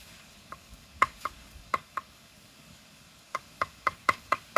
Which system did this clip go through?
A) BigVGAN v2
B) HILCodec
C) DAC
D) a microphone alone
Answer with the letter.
C